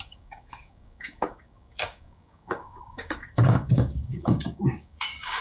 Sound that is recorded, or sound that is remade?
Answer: remade